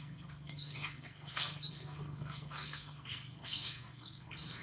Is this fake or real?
fake